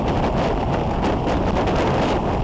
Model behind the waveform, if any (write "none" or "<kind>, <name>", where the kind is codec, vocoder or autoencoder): vocoder, BigVGAN v2